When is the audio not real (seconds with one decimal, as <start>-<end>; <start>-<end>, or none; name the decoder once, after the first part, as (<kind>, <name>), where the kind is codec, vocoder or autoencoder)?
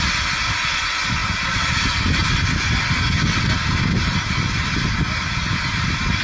none